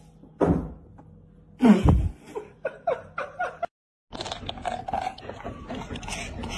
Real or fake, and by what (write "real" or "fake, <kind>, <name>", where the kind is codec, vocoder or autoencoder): real